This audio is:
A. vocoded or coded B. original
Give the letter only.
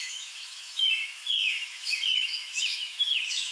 A